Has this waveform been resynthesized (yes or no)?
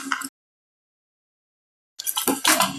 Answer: no